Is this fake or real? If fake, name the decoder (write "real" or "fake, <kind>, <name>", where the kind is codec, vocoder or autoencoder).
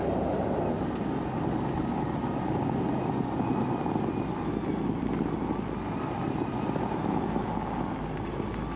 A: real